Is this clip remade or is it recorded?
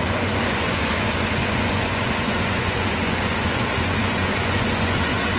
remade